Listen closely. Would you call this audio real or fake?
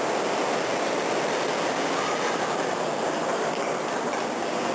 fake